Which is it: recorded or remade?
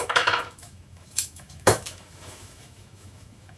remade